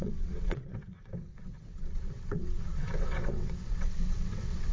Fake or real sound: fake